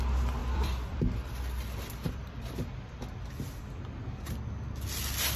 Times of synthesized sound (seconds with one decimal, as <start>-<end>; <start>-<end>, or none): 0.4-3.6